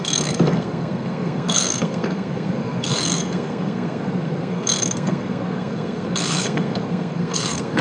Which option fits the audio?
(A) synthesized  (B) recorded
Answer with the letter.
A